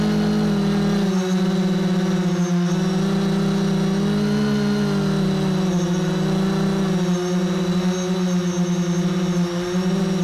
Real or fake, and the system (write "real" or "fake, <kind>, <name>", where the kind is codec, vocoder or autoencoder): real